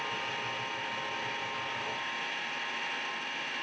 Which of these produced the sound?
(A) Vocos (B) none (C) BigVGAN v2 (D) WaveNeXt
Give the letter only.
B